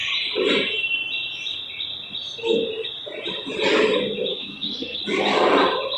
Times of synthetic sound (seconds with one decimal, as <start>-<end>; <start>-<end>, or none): 4.3-5.0